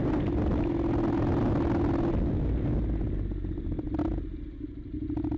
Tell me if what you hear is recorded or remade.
recorded